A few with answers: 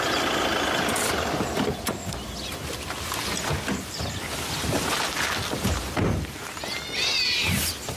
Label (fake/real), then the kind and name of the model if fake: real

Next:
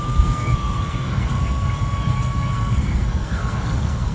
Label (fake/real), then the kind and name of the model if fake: fake, codec, SNAC